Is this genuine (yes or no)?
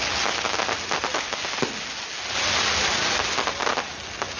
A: yes